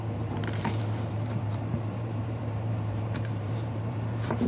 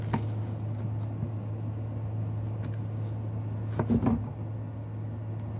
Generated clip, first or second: first